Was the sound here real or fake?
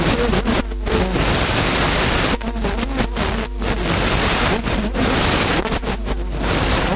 real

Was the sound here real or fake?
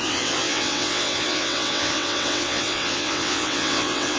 fake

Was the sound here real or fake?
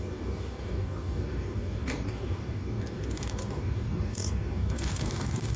fake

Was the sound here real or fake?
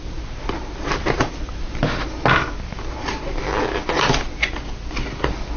real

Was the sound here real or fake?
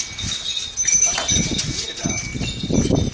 real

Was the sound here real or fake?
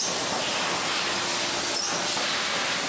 real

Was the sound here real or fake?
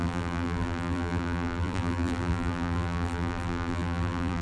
fake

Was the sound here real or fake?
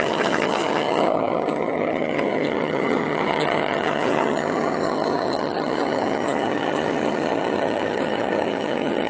fake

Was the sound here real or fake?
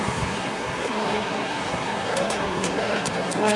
fake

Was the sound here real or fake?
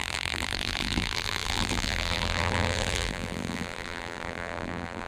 fake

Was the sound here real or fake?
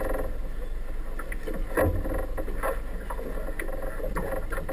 real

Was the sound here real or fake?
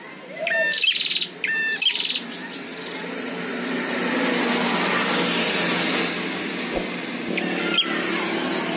real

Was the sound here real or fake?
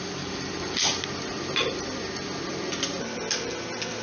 real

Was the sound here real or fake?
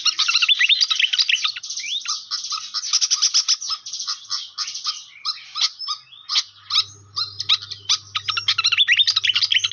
real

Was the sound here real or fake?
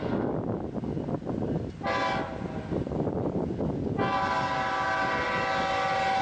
real